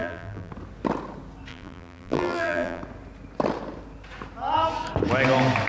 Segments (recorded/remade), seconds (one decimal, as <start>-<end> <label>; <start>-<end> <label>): 0.0-0.5 remade; 0.5-1.5 recorded; 1.5-2.8 remade; 2.8-5.7 recorded

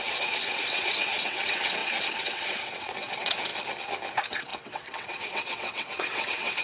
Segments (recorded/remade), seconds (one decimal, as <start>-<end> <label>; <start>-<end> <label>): 0.0-3.5 remade; 3.5-4.1 recorded; 4.1-6.6 remade

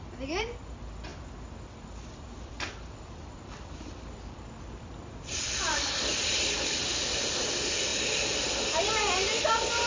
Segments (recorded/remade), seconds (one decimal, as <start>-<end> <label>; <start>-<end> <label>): 0.0-9.9 recorded